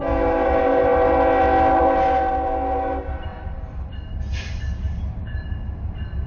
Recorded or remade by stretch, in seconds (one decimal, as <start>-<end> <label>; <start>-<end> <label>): 0.0-6.3 recorded